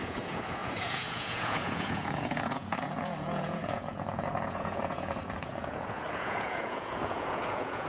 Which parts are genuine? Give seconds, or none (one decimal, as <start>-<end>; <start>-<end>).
none